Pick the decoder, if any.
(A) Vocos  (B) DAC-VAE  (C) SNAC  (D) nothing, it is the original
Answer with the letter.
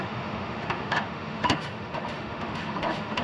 B